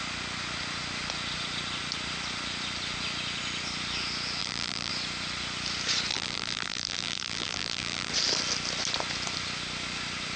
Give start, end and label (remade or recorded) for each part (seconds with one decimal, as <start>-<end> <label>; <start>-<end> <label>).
0.0-4.4 recorded; 4.4-4.9 remade; 4.9-6.1 recorded; 6.1-8.1 remade; 8.1-10.4 recorded